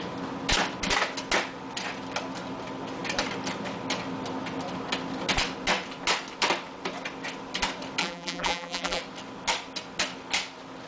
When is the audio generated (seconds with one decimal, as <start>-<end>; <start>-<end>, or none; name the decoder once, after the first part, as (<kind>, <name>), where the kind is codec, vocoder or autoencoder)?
8.0-9.0 (vocoder, BigVGAN v2)